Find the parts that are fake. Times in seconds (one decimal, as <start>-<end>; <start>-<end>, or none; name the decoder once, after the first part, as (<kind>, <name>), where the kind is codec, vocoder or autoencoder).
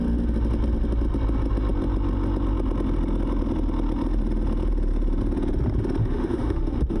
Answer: 6.0-7.0 (autoencoder, DAC-VAE)